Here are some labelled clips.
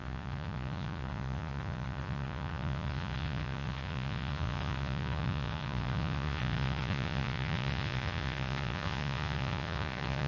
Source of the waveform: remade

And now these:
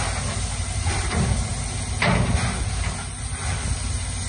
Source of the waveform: recorded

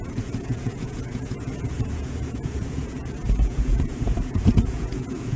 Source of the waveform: remade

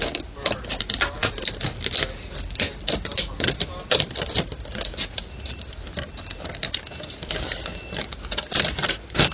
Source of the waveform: recorded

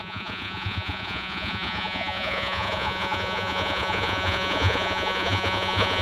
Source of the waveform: remade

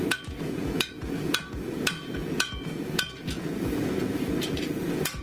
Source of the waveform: remade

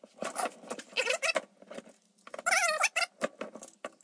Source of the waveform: recorded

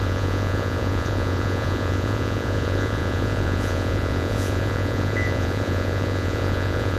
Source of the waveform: remade